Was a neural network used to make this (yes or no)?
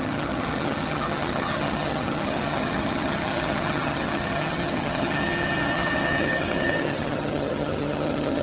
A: yes